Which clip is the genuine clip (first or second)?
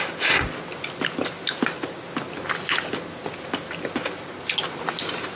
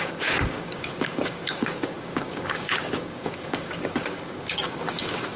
first